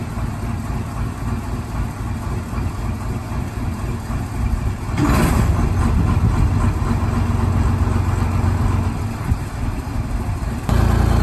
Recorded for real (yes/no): yes